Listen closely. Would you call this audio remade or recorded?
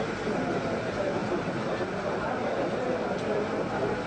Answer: recorded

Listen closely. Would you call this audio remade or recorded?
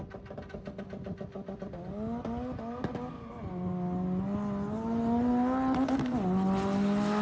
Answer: recorded